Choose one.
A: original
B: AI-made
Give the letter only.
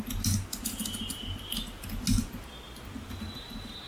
A